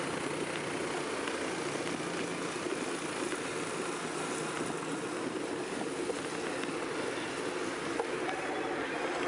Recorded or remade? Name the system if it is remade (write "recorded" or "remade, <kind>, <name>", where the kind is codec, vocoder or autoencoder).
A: recorded